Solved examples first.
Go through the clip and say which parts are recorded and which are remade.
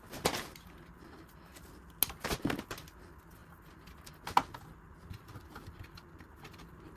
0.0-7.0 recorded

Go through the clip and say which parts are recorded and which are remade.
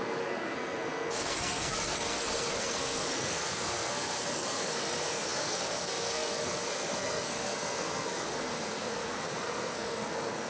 0.0-10.5 remade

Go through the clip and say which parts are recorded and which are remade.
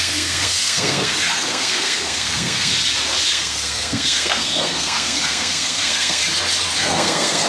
0.0-2.7 remade; 2.7-3.3 recorded; 3.3-6.2 remade; 6.2-6.8 recorded; 6.8-7.5 remade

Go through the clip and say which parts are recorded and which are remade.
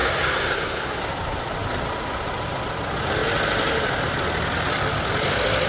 0.0-1.0 remade; 1.0-5.7 recorded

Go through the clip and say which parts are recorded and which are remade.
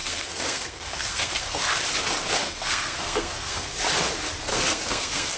0.0-1.7 remade; 1.7-2.4 recorded; 2.4-3.7 remade; 3.7-4.5 recorded; 4.5-5.4 remade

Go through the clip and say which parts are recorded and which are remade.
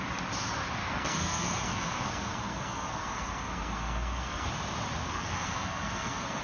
0.0-0.8 recorded; 0.8-4.5 remade; 4.5-5.0 recorded; 5.0-6.4 remade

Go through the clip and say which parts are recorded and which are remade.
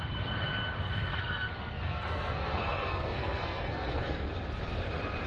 0.0-1.1 recorded; 1.1-4.3 remade; 4.3-5.3 recorded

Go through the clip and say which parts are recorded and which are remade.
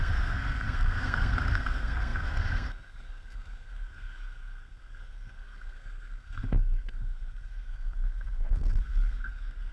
0.0-9.7 remade